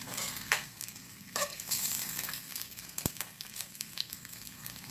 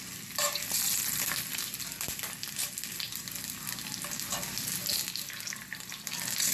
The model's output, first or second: first